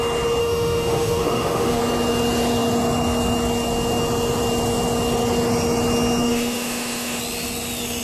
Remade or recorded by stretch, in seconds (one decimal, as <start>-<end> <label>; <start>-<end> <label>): 0.0-0.4 recorded; 0.4-1.8 remade; 1.8-6.2 recorded; 6.2-7.2 remade; 7.2-8.0 recorded